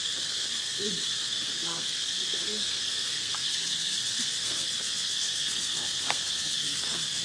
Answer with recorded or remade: remade